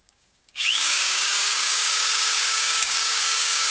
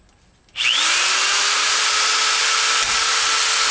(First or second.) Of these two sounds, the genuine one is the second